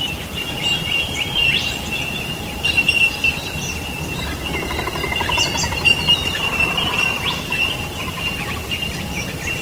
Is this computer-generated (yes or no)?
no